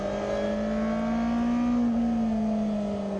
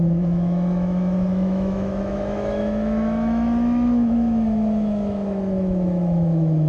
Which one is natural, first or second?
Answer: first